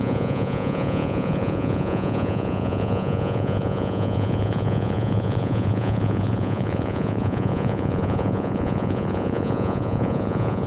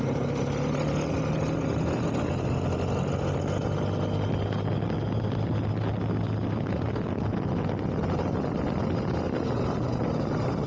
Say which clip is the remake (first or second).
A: first